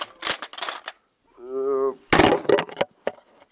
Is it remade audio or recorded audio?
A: recorded